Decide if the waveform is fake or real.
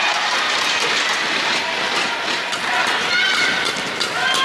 real